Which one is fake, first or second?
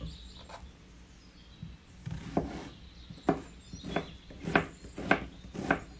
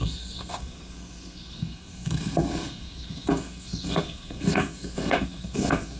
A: second